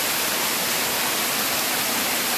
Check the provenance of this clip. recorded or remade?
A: recorded